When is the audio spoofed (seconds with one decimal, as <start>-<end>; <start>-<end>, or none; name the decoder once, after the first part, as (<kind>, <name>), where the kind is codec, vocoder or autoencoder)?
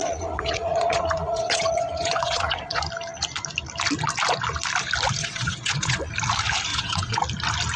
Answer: 0.0-2.8 (vocoder, Vocos); 5.2-6.1; 6.7-7.2